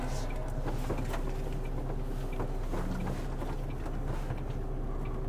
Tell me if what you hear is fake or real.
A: real